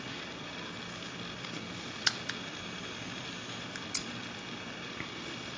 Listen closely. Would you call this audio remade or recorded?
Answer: recorded